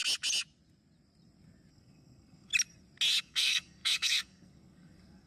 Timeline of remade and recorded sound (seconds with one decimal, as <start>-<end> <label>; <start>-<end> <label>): 0.0-1.7 recorded; 1.7-2.5 remade; 2.5-3.2 recorded; 3.2-5.3 remade